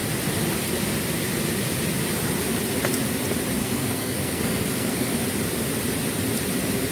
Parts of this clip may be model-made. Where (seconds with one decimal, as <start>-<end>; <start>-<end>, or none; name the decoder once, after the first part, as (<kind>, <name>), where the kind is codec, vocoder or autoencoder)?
3.6-5.1 (codec, SNAC)